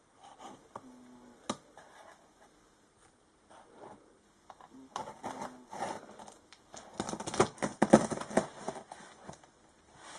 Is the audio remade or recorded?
recorded